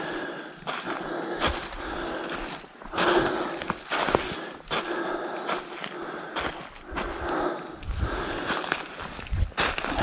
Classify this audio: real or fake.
real